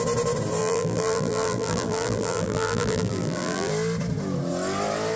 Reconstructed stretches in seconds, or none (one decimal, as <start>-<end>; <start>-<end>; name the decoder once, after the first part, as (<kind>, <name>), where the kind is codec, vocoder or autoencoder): 0.6-3.7 (vocoder, BigVGAN v2)